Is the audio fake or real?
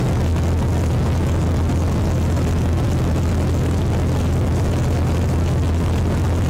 real